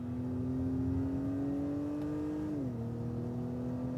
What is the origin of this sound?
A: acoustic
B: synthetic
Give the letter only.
A